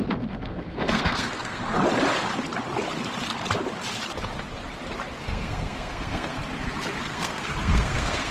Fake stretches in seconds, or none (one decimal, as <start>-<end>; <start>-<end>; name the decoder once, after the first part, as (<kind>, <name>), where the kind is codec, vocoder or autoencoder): 0.0-1.6 (codec, SNAC); 5.2-6.4; 7.0-8.3